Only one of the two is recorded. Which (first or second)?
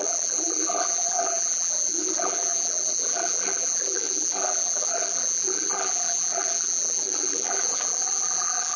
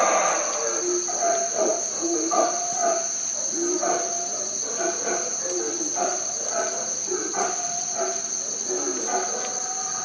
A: second